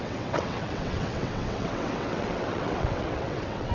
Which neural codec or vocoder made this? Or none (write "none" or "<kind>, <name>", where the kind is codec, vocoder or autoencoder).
vocoder, WaveNeXt